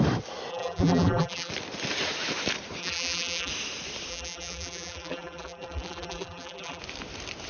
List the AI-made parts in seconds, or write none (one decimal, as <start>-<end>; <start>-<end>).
0.5-1.5; 2.8-3.5; 4.1-6.8